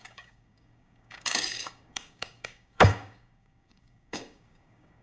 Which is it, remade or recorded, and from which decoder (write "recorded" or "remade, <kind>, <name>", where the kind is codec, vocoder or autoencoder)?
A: remade, codec, DAC